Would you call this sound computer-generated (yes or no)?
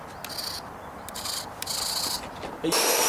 no